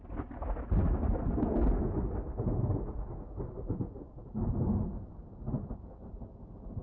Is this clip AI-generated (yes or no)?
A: no